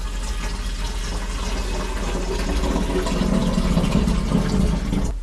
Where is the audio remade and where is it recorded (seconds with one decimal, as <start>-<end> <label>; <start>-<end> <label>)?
0.0-5.2 recorded

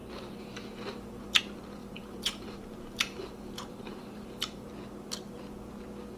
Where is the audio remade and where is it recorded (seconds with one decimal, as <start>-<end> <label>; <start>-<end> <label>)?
0.0-1.4 remade; 1.4-1.8 recorded; 1.8-4.7 remade; 4.7-6.2 recorded

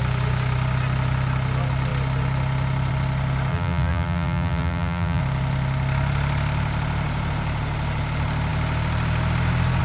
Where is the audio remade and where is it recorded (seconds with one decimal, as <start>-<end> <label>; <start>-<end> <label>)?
0.0-3.5 recorded; 3.5-5.2 remade; 5.2-9.8 recorded

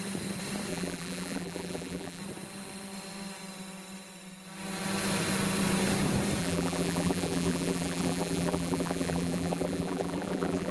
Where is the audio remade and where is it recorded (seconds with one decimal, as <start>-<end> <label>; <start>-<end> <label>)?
0.0-0.7 recorded; 0.7-2.2 remade; 2.2-6.4 recorded; 6.4-10.7 remade

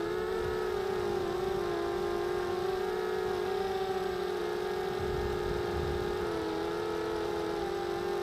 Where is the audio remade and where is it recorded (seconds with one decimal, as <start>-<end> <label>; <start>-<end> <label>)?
0.0-8.2 recorded

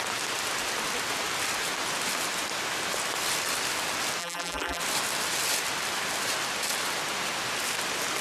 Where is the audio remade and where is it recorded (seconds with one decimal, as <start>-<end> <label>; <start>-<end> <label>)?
0.0-4.2 recorded; 4.2-4.8 remade; 4.8-8.2 recorded